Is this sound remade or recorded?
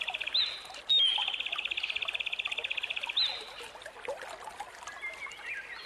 recorded